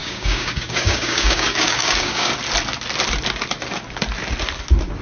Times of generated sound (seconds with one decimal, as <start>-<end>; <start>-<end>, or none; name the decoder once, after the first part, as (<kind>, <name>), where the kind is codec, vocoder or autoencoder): 0.0-2.3 (codec, DAC)

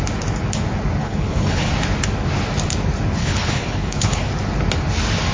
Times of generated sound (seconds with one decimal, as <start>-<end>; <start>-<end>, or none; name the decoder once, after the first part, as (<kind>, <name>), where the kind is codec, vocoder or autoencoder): 1.0-1.7 (codec, HILCodec); 3.2-4.3

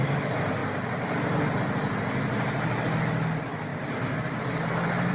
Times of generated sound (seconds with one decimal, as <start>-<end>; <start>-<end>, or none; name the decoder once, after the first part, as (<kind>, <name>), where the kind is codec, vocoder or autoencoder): none

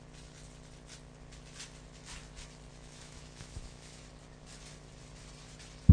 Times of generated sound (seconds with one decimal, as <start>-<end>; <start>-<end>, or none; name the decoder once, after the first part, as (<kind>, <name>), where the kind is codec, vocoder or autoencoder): 2.7-4.0 (autoencoder, DAC-VAE)

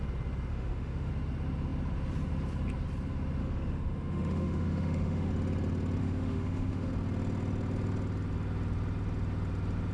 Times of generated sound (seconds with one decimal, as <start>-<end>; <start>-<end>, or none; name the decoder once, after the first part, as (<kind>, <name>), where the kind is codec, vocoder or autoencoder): 0.5-1.1 (autoencoder, DAC-VAE); 3.4-5.3; 6.0-6.9

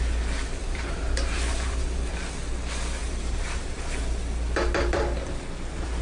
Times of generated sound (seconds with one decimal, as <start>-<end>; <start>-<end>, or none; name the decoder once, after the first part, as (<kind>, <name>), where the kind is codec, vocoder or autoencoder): 0.6-2.1 (vocoder, BigVGAN v2); 3.0-3.9

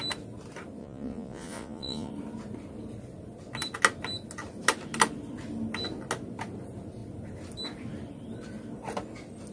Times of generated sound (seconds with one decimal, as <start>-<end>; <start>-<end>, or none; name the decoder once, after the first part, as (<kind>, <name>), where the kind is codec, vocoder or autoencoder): 0.8-2.1 (vocoder, Vocos)